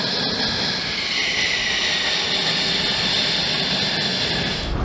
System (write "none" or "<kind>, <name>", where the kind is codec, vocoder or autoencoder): none